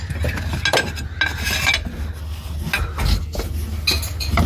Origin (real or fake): real